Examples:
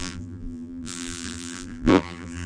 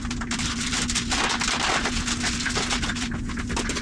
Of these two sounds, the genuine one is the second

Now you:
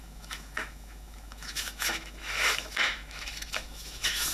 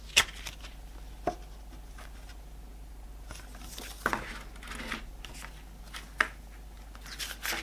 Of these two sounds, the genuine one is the second